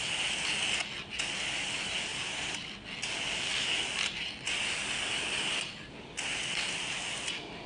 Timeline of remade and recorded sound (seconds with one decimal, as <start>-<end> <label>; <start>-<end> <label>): 0.0-2.1 recorded; 2.1-2.8 remade; 2.8-7.7 recorded